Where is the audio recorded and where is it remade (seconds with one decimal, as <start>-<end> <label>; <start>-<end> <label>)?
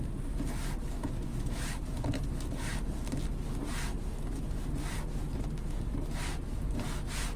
0.0-1.0 recorded; 1.0-1.9 remade; 1.9-7.4 recorded